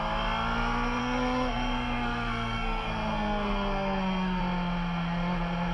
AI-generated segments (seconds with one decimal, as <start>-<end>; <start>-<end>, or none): 1.0-4.4